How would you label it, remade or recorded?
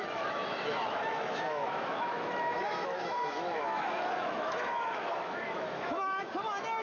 remade